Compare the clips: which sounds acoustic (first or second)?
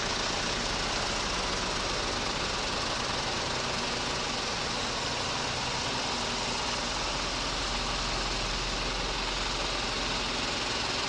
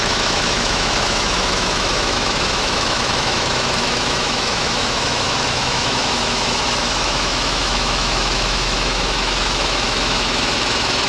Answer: first